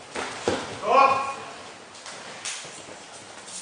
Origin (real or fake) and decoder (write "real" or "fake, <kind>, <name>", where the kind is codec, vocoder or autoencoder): real